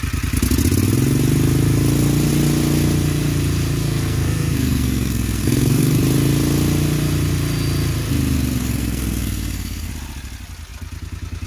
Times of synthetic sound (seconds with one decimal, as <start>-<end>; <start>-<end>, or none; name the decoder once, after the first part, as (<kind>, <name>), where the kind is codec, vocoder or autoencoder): 3.8-6.0 (codec, SNAC); 8.6-9.9